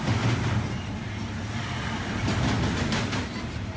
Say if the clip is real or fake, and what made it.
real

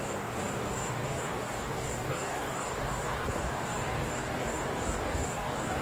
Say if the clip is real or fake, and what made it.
fake, codec, DAC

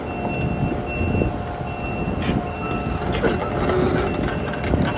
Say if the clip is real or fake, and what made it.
real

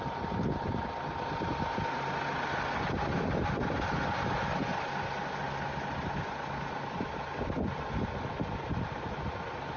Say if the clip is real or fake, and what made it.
real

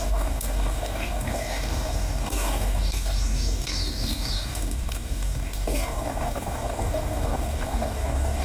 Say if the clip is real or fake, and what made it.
fake, codec, DAC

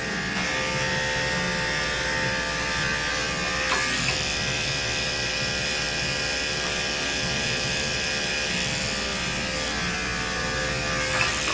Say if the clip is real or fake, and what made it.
real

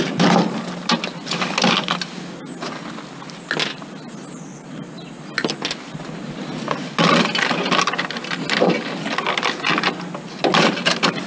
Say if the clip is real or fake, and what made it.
real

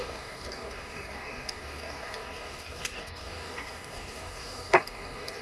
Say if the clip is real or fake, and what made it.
fake, codec, DAC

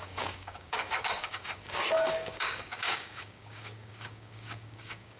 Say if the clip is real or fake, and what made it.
fake, codec, DAC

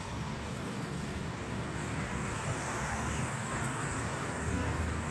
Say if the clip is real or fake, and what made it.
fake, codec, DAC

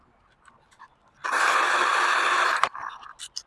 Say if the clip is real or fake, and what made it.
real